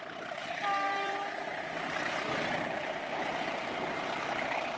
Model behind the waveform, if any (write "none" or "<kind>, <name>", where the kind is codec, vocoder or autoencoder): vocoder, BigVGAN v2